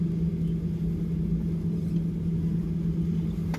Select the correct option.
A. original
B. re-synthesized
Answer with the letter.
A